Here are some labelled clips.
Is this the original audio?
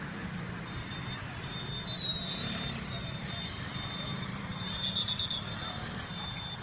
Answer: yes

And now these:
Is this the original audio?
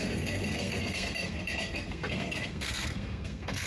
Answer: no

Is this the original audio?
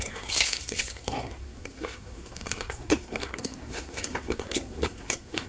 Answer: no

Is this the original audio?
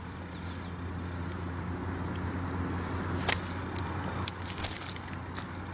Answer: yes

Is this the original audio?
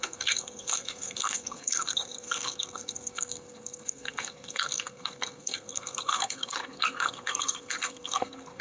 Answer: no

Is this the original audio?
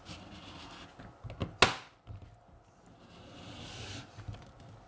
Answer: yes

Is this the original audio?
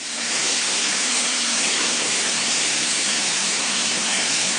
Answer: no